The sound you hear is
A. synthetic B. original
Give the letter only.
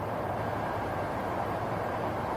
A